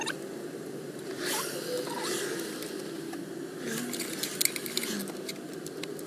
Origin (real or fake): real